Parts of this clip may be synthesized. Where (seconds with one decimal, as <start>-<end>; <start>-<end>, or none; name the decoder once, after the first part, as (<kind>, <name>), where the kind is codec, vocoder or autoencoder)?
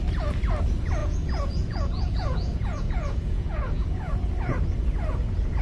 1.0-4.1 (vocoder, Vocos)